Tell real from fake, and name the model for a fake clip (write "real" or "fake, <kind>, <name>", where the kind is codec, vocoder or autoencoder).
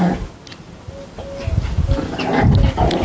real